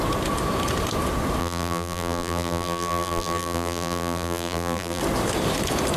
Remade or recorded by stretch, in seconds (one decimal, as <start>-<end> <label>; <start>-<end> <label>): 0.0-1.4 recorded; 1.4-5.0 remade; 5.0-6.0 recorded